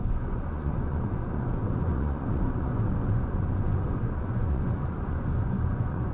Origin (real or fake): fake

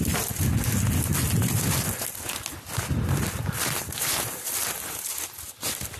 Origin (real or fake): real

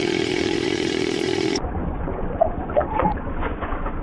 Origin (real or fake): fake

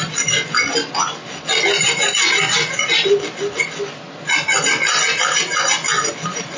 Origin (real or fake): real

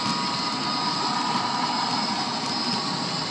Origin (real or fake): real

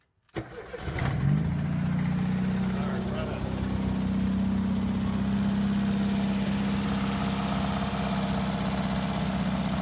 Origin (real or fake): real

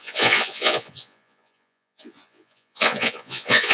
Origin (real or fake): fake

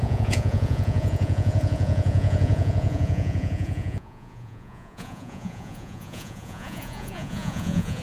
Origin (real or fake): fake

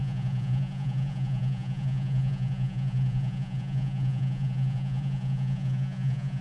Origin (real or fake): fake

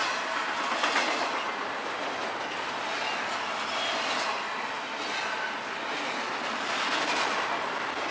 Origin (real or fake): real